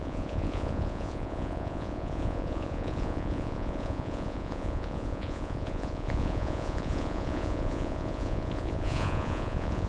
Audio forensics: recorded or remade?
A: remade